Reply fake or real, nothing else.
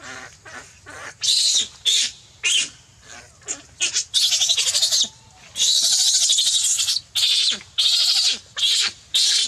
real